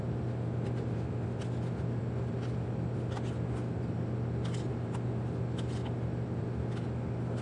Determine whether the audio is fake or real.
real